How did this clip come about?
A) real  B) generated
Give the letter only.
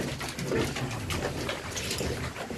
A